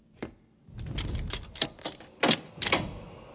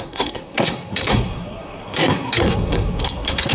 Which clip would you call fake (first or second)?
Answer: second